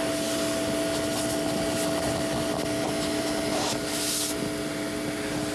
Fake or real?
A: real